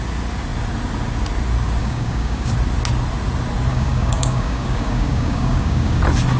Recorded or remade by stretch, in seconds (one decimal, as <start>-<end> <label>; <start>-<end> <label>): 0.0-1.8 recorded; 1.8-2.5 remade; 2.5-3.7 recorded; 3.7-6.0 remade; 6.0-6.4 recorded